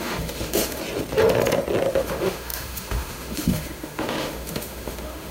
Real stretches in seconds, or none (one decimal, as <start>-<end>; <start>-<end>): 0.8-1.9